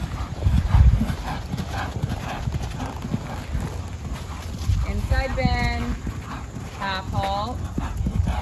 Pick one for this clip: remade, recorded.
recorded